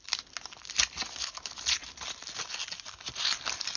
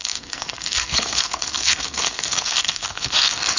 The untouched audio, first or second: first